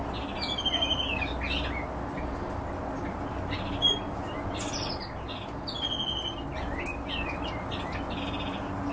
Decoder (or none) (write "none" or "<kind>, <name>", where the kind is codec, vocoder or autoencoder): none